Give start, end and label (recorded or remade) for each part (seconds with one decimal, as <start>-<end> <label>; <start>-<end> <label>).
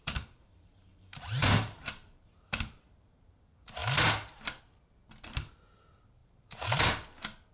0.0-3.4 remade; 3.4-3.8 recorded; 3.8-4.6 remade; 4.6-6.2 recorded; 6.2-6.9 remade; 6.9-7.5 recorded